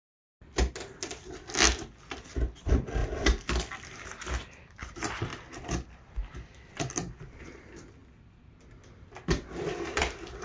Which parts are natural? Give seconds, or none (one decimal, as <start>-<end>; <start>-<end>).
0.0-1.1; 5.3-7.4; 8.0-9.5